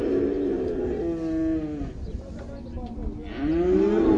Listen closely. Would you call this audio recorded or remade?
recorded